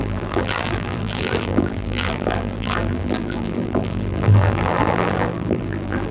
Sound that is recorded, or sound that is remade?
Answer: remade